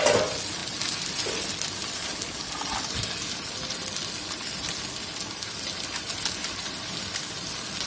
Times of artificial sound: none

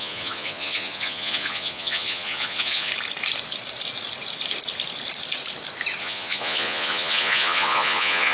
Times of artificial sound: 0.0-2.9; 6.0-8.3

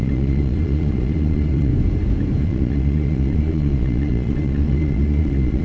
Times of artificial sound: 0.0-1.7; 2.4-5.6

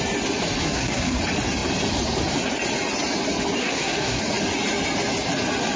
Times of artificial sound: 0.6-1.2; 3.6-4.2

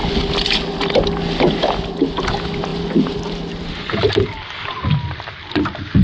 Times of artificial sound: none

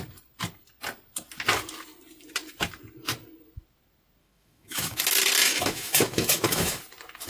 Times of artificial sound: 4.2-5.0; 5.4-6.8